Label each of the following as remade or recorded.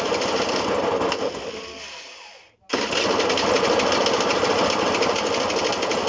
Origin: recorded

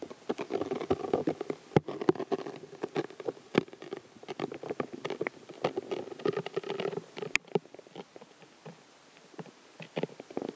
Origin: recorded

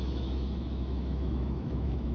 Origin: remade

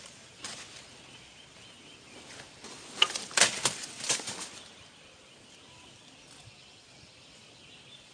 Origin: recorded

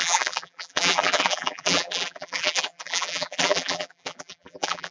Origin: remade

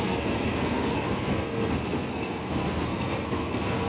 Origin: remade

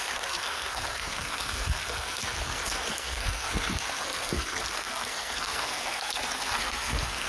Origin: remade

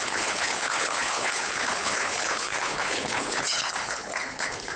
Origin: remade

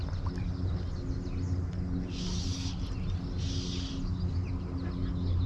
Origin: recorded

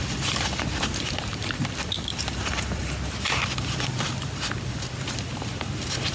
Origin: remade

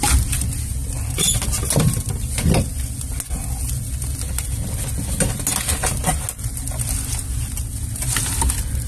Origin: recorded